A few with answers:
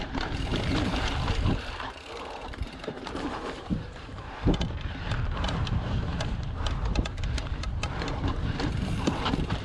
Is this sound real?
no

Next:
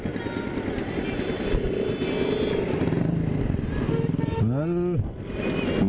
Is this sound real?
yes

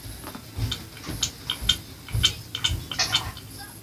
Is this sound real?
yes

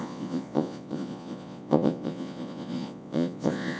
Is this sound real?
no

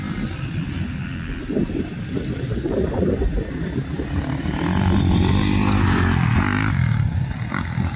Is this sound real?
yes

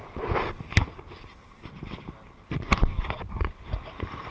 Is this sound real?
yes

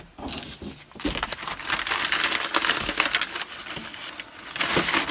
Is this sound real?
yes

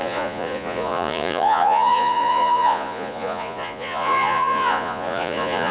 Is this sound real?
no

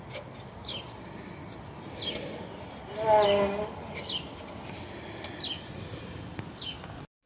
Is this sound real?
yes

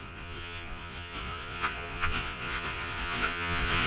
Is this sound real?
no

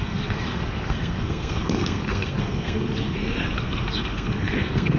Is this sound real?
no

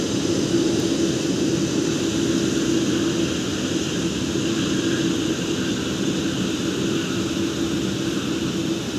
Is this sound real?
yes